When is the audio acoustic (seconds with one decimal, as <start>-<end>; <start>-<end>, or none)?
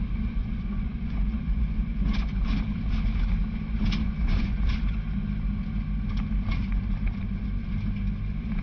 0.0-0.4; 2.5-4.0; 4.6-8.6